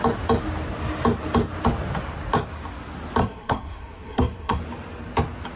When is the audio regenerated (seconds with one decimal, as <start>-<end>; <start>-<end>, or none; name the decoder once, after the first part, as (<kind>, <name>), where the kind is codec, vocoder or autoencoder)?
3.2-4.6 (codec, SNAC)